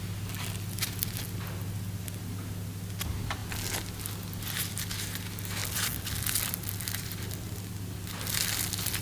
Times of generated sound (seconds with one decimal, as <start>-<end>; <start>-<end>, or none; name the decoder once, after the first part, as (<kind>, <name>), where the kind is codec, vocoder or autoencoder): 5.6-9.0 (vocoder, BigVGAN v2)